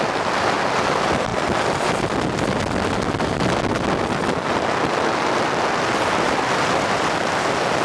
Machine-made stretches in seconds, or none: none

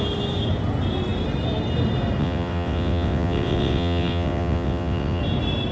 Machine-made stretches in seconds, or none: 2.2-5.2 (vocoder, WaveNeXt)

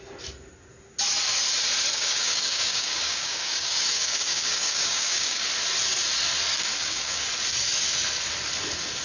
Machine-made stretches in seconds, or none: 1.9-5.5 (codec, DAC); 6.7-7.2

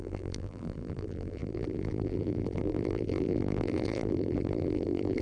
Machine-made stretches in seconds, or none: 0.0-5.2 (vocoder, BigVGAN v2)